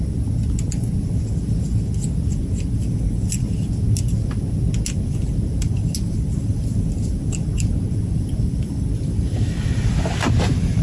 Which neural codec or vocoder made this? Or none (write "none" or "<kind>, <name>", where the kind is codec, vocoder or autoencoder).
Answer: none